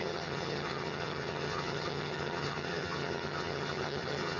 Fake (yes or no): yes